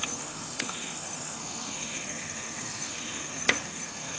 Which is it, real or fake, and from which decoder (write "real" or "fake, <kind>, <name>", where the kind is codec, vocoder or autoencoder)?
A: fake, codec, SNAC